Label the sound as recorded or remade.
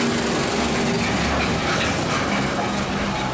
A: recorded